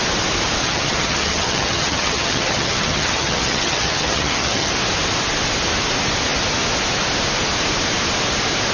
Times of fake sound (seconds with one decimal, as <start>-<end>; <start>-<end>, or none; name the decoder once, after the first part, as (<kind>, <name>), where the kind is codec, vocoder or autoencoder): 0.6-4.7 (vocoder, HiFi-GAN)